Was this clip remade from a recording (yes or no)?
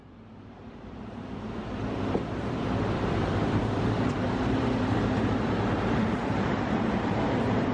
yes